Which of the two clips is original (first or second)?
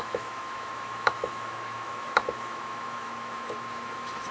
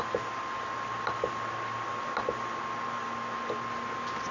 second